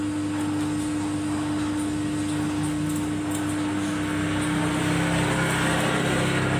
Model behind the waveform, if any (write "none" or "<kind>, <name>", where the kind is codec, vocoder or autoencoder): none